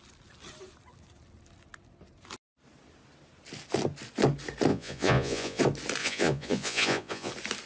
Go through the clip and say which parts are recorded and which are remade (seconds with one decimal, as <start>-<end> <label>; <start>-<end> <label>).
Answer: 0.0-4.7 recorded; 4.7-5.6 remade; 5.6-6.0 recorded; 6.0-7.3 remade; 7.3-7.7 recorded